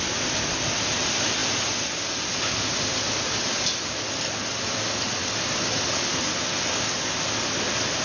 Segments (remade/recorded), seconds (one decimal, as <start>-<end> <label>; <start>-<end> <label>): 0.0-1.4 remade; 1.4-3.0 recorded; 3.0-5.2 remade; 5.2-7.2 recorded; 7.2-8.0 remade